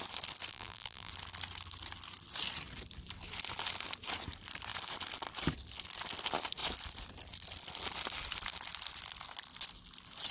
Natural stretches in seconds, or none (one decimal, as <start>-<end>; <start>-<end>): 0.0-0.5; 1.1-10.3